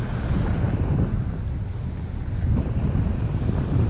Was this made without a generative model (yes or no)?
yes